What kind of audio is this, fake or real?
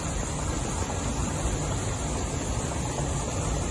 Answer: real